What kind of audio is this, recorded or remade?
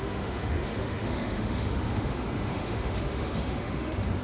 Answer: remade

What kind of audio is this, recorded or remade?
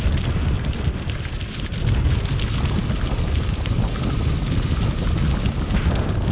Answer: recorded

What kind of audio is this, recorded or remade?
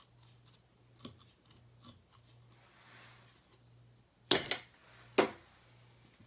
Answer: recorded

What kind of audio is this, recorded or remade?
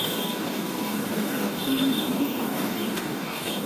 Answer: remade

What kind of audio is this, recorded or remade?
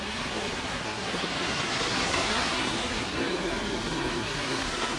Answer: remade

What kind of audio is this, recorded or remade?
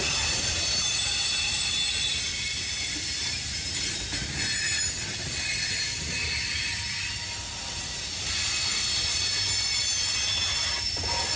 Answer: recorded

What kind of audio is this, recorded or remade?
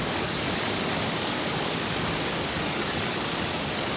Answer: remade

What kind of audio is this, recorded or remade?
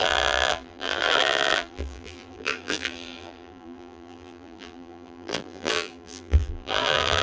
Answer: remade